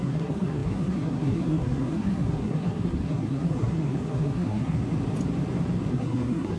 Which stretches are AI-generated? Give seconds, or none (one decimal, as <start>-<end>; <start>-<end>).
0.0-4.8; 5.9-6.6